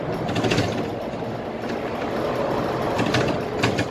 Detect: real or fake real